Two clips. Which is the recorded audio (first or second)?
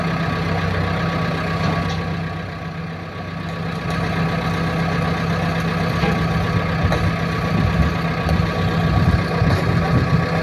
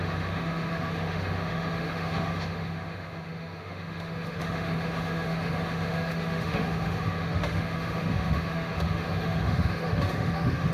first